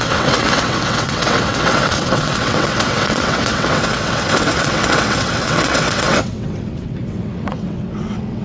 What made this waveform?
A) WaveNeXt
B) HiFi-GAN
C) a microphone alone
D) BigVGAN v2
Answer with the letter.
A